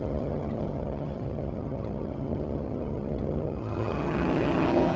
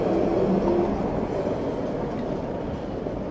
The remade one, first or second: first